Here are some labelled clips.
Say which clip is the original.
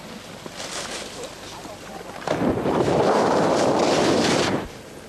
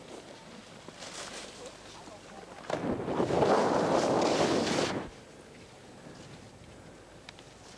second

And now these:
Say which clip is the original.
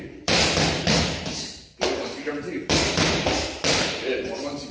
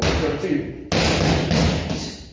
second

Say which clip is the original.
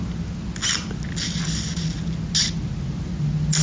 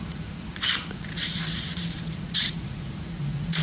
first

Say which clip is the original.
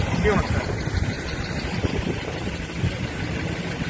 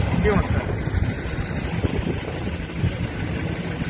second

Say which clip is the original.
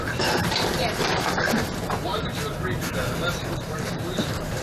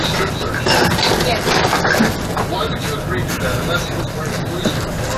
second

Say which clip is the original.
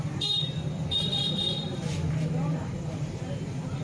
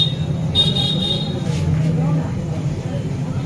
second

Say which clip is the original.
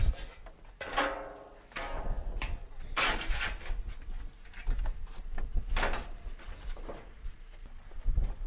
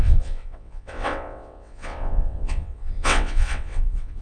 first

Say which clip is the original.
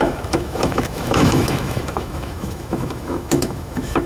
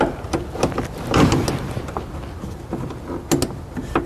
second